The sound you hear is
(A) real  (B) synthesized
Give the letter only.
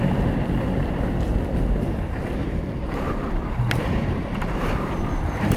B